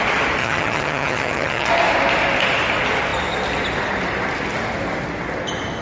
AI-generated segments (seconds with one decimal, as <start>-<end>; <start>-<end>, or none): 0.4-1.7